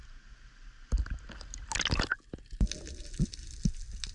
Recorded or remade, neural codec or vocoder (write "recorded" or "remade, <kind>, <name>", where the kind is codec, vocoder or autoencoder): recorded